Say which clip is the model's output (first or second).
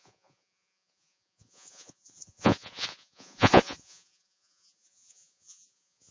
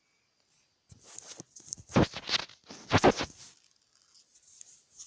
first